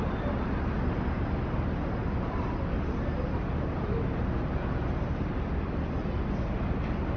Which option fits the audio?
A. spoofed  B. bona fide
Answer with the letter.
B